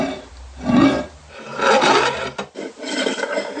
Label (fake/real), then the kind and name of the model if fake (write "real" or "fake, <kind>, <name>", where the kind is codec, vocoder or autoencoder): real